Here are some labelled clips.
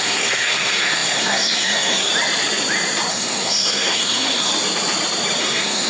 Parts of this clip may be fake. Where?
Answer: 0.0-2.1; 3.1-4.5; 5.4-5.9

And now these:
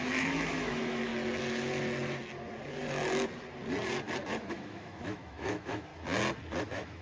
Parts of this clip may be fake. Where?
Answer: 0.0-1.1; 4.5-5.9; 6.6-7.0